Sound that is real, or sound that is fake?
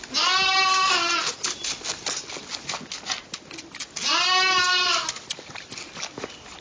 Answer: real